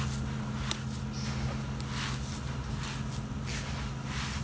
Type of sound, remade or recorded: recorded